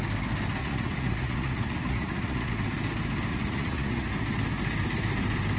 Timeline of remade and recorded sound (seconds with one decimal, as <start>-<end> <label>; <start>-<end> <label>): 0.0-0.6 recorded; 0.6-2.5 remade; 2.5-3.3 recorded; 3.3-4.1 remade; 4.1-5.6 recorded